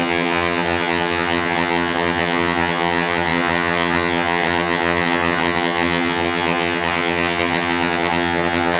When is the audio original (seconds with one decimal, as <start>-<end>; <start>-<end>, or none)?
none